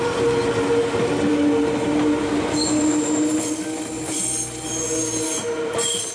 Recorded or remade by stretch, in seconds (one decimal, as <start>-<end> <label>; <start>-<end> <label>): 0.0-6.1 recorded